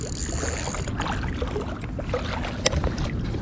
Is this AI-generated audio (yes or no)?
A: no